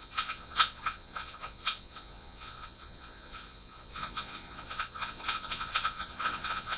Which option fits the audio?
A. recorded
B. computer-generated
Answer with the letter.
B